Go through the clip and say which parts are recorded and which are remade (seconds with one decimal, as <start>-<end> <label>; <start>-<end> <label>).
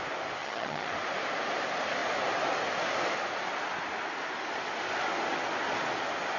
0.0-0.4 recorded; 0.4-0.9 remade; 0.9-6.4 recorded